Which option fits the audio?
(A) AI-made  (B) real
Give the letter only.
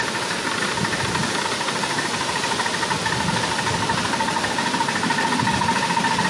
B